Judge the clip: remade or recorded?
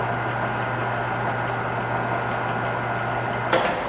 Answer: recorded